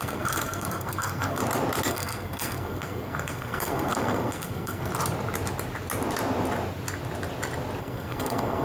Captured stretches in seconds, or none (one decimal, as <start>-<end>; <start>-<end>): 1.4-1.9; 4.9-7.8